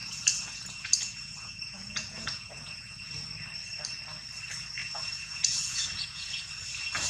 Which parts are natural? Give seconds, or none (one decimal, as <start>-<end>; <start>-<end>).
3.1-4.8; 6.4-7.1